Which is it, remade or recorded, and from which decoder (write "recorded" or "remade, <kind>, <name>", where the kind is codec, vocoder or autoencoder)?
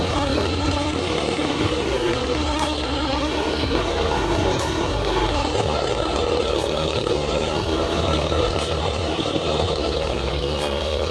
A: remade, codec, SNAC